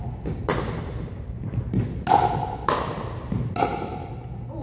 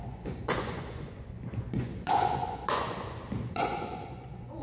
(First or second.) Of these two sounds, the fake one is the second